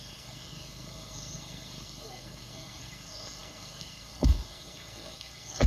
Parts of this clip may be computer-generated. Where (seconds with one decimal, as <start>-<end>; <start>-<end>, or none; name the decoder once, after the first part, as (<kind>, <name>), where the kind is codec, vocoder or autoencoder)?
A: 0.0-5.7 (codec, SNAC)